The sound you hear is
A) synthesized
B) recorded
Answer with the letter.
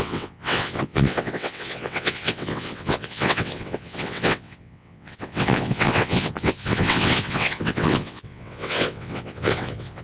A